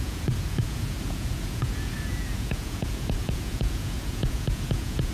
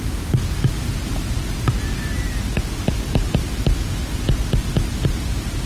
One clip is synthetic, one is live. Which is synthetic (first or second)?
first